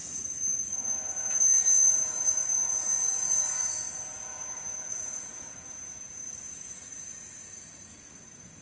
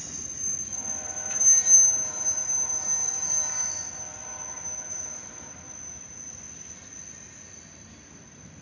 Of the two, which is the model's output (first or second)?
first